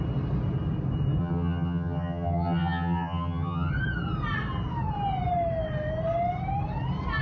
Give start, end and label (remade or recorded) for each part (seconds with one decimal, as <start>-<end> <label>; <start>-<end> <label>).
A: 0.0-1.2 recorded; 1.2-3.7 remade; 3.7-7.2 recorded